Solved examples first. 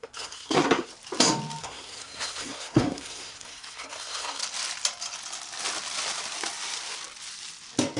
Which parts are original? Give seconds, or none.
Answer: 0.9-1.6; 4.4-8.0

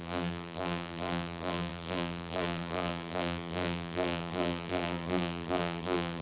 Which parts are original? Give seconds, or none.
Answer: none

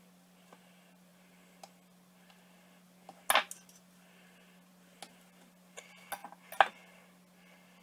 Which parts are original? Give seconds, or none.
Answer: 0.0-7.8

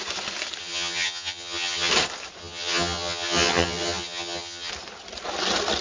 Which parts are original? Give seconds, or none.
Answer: 0.0-0.6; 1.9-2.4; 4.7-5.8